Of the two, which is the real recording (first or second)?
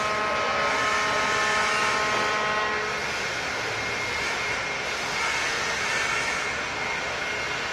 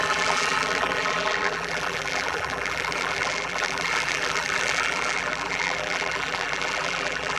first